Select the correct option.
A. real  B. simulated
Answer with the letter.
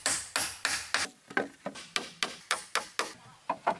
A